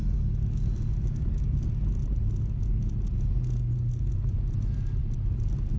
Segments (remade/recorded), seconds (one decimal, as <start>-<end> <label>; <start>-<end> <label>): 0.0-5.8 recorded